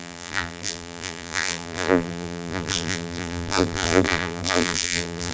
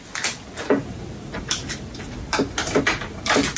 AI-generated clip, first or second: first